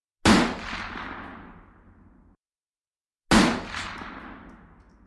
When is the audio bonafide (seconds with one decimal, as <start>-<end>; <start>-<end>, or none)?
0.0-5.1